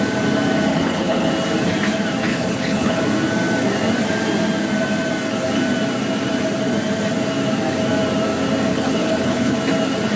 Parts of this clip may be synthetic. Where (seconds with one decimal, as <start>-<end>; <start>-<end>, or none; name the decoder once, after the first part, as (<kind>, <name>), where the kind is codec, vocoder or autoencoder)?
0.7-1.3 (codec, HILCodec); 2.3-3.0; 8.7-9.6